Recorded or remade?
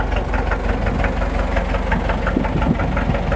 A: recorded